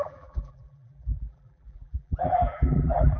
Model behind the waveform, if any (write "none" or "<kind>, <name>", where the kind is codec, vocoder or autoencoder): vocoder, BigVGAN v2